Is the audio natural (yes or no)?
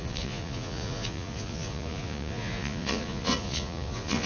no